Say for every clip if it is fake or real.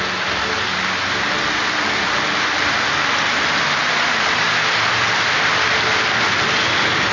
real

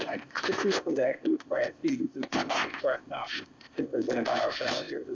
fake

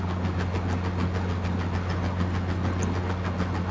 real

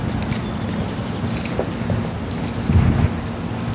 real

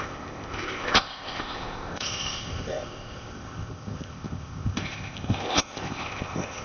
fake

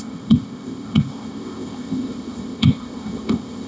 fake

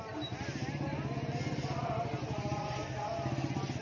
real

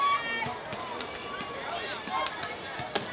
real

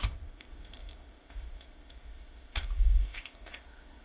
fake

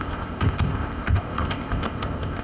fake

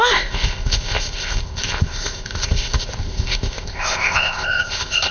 fake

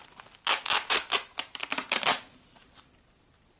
real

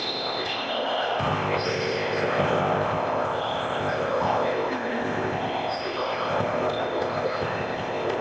fake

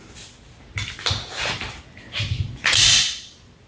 real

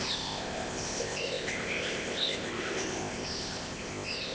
fake